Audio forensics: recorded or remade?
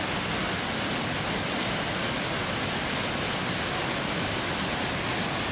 recorded